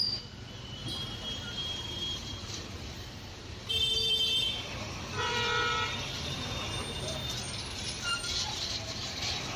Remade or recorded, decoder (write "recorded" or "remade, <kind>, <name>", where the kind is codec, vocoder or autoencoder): remade, vocoder, BigVGAN v2